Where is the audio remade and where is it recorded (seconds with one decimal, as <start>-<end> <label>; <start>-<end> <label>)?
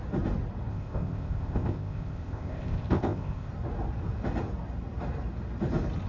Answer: 0.0-0.7 recorded; 0.7-3.5 remade; 3.5-6.1 recorded